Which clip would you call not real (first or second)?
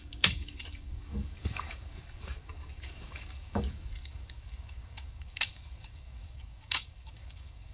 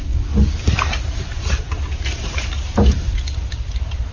first